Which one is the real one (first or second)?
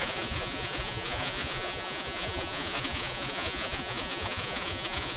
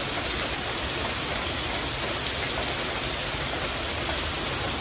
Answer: second